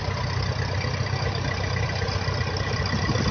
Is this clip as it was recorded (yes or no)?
yes